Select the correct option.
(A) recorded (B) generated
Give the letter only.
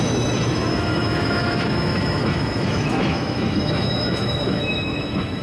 B